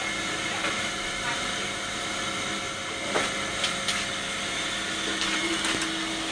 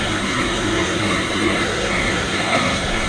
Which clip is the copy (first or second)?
second